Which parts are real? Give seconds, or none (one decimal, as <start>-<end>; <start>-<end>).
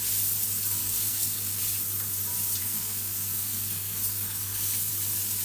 0.0-0.8; 1.6-2.6; 4.9-5.4